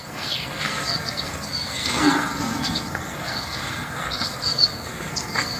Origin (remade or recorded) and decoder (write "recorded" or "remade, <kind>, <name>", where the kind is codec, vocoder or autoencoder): remade, codec, SNAC